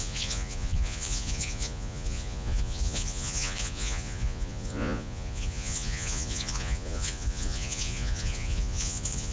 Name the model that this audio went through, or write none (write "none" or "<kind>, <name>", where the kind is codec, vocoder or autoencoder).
vocoder, Vocos